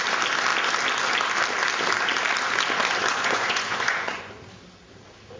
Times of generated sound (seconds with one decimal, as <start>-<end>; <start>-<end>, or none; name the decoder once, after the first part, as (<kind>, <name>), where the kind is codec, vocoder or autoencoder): 3.1-4.3 (vocoder, Vocos)

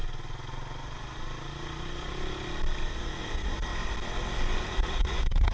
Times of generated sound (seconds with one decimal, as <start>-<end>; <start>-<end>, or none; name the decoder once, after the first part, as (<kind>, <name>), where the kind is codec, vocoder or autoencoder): 3.0-3.7 (vocoder, Vocos); 4.6-5.5

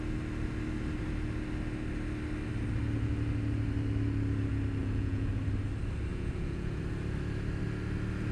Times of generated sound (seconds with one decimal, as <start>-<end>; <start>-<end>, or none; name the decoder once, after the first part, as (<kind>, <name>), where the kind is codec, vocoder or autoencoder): 4.8-5.3 (vocoder, Vocos); 6.1-6.8

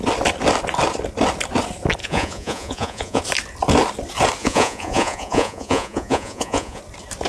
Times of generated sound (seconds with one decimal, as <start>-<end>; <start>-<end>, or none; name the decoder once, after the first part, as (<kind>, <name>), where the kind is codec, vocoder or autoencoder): 2.0-3.2 (vocoder, Vocos); 4.4-6.8

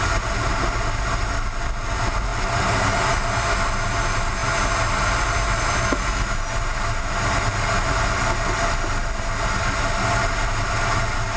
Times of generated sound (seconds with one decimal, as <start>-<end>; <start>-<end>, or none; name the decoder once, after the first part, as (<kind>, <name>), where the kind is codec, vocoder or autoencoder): none